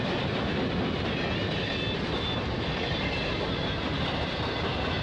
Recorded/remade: recorded